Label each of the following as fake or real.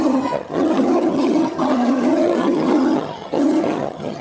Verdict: fake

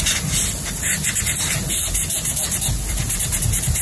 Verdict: real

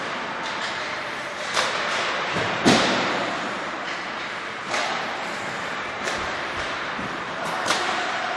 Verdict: fake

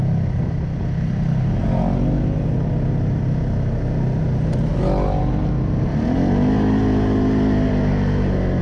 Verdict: real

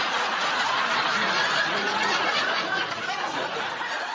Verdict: fake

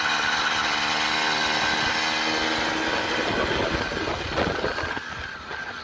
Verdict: real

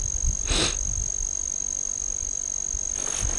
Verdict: real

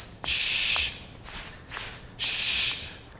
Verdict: real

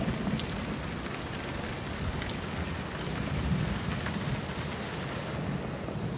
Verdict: real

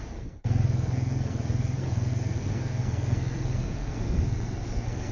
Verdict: fake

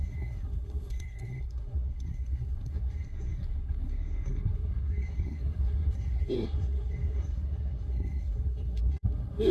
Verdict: fake